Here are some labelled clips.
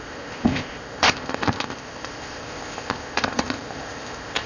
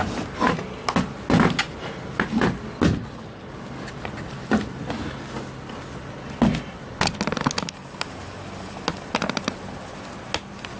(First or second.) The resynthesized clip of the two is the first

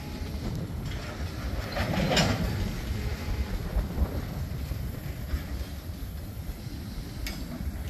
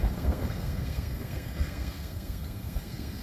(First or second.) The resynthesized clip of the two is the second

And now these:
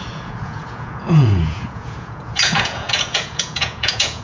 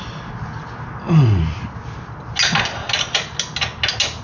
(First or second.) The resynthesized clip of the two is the first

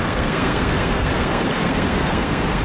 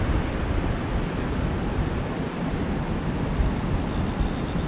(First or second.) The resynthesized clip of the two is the first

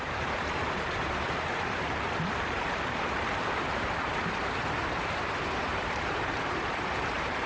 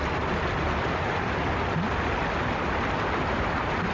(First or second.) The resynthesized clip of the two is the first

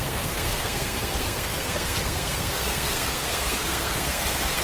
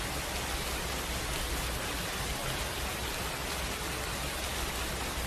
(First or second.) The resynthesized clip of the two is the first